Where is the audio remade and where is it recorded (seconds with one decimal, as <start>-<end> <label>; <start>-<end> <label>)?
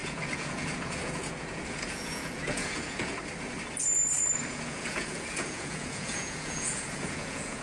0.0-3.2 remade; 3.2-4.5 recorded; 4.5-7.6 remade